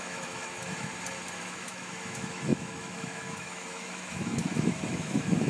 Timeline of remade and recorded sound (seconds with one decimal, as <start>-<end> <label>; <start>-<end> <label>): 0.0-0.9 remade; 0.9-1.4 recorded; 1.4-5.5 remade